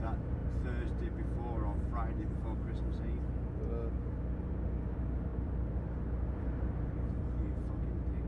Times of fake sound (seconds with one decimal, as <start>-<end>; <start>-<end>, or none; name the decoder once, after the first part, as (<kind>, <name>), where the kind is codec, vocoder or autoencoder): none